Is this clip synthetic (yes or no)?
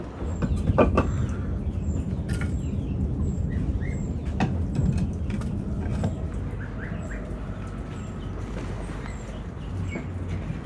no